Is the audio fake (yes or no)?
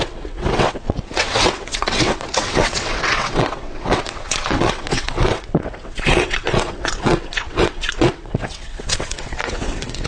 yes